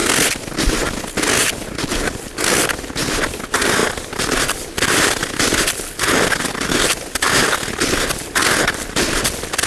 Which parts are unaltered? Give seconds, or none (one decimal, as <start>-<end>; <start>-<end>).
0.0-9.7